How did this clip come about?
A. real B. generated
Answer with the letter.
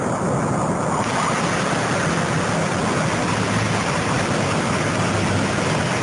A